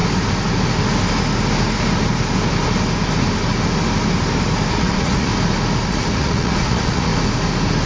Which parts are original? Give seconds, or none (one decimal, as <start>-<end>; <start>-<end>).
0.0-4.7; 5.3-5.9; 7.1-7.9